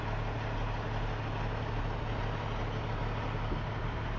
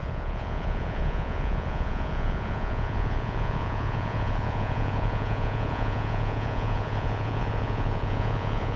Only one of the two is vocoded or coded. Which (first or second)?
second